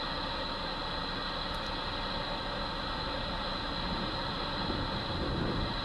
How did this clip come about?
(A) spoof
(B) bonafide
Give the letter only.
B